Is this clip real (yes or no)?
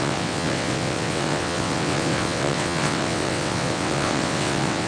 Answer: no